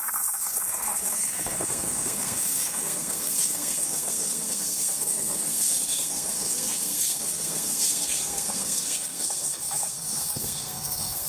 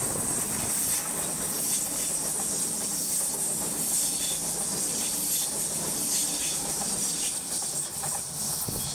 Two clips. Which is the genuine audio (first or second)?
second